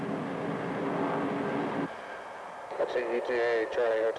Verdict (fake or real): real